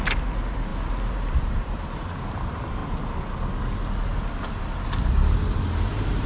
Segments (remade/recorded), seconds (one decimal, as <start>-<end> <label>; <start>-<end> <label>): 0.0-2.8 remade; 2.8-5.8 recorded; 5.8-6.3 remade